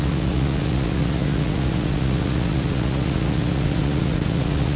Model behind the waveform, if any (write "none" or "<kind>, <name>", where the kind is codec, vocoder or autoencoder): vocoder, Vocos